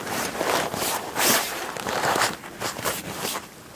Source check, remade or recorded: remade